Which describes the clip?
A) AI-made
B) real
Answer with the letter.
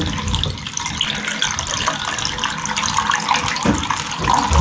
B